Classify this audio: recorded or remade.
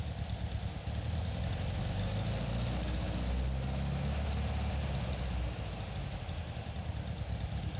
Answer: recorded